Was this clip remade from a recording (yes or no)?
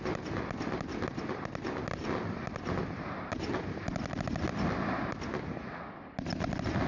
no